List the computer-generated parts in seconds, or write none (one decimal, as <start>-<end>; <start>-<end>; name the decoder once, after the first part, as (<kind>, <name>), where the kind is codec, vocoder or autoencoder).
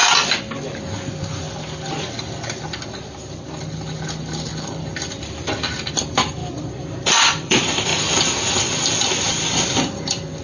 1.1-7.9 (vocoder, BigVGAN v2); 9.3-10.4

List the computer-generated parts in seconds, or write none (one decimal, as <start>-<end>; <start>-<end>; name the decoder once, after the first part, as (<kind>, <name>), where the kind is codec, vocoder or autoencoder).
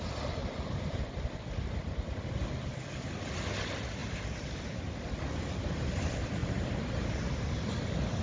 0.4-1.0 (vocoder, BigVGAN v2); 4.0-4.9; 6.4-7.3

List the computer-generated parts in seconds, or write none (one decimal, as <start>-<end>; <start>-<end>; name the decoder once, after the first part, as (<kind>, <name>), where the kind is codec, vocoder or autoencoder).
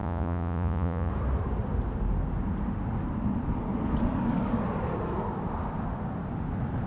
0.0-1.1 (vocoder, Vocos)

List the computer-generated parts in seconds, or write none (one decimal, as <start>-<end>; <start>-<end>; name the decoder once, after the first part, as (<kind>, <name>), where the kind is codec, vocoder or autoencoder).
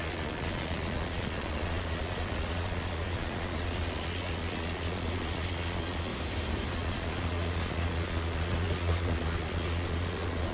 0.0-6.1 (vocoder, Vocos); 6.7-10.5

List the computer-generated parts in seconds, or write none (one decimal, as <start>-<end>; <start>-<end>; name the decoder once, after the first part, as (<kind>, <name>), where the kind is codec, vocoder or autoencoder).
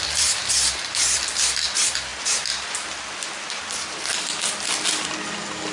0.4-1.5 (vocoder, BigVGAN v2); 2.1-3.3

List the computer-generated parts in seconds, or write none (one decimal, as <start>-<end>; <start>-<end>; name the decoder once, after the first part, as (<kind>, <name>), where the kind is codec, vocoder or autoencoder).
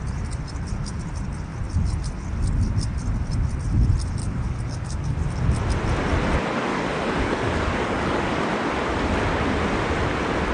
4.2-5.2 (codec, DAC); 6.7-8.4